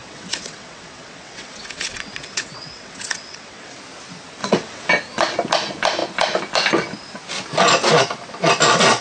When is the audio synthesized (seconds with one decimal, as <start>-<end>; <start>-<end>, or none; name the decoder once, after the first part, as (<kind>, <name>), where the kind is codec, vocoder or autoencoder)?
0.0-3.8 (vocoder, WaveNeXt); 4.4-4.9